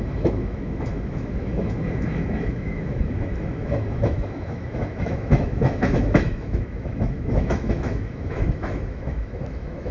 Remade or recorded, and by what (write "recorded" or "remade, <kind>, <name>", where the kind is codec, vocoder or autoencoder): remade, autoencoder, DAC-VAE